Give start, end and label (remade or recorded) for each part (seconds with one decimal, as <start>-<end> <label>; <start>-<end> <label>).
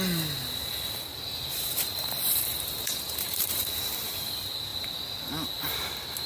0.0-1.1 recorded; 1.1-3.6 remade; 3.6-6.3 recorded